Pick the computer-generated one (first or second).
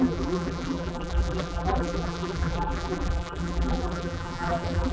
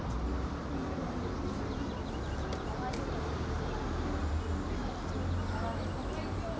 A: first